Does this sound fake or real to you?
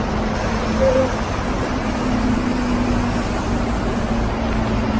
real